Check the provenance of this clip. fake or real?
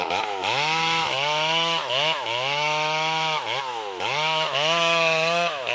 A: fake